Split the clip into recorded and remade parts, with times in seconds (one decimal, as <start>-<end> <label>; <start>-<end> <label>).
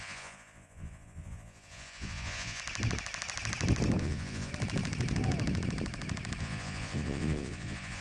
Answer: 0.0-2.6 remade; 2.6-4.0 recorded; 4.0-4.5 remade; 4.5-6.4 recorded; 6.4-8.0 remade